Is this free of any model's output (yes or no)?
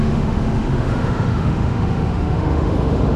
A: no